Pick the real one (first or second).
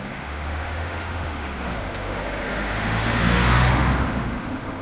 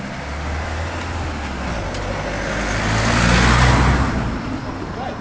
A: second